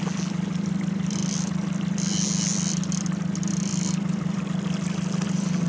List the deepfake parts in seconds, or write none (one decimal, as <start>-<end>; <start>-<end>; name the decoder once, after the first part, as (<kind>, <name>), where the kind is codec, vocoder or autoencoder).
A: 3.7-4.4 (vocoder, BigVGAN v2)